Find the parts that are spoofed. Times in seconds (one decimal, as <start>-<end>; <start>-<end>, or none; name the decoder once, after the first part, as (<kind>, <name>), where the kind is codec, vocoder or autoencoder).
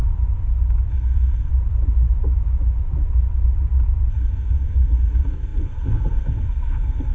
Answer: 0.9-1.5 (codec, SNAC); 4.1-7.1